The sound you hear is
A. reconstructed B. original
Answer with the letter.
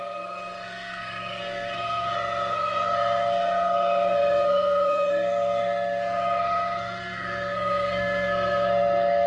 A